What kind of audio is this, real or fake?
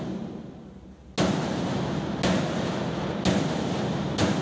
real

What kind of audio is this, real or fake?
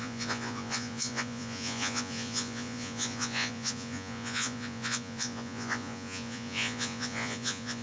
fake